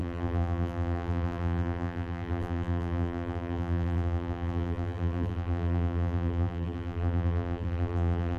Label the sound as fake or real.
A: fake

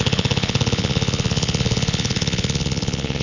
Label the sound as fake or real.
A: fake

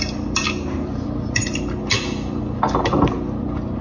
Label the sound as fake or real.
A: real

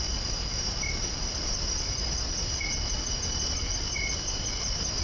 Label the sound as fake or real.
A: real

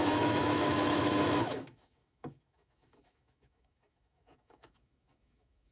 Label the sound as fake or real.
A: fake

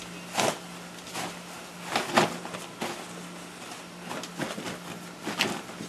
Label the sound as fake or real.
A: real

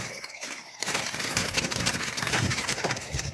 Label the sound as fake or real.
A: fake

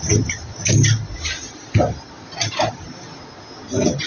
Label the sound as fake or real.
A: real